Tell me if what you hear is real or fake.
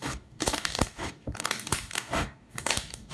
fake